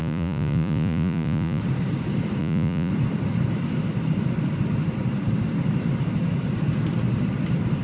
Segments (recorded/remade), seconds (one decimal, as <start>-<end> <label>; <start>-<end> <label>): 0.0-1.6 remade; 1.6-2.4 recorded; 2.4-2.9 remade; 2.9-7.8 recorded